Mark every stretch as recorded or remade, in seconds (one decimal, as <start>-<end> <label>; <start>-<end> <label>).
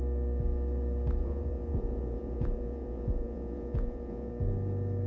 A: 0.0-1.2 recorded; 1.2-4.3 remade; 4.3-5.1 recorded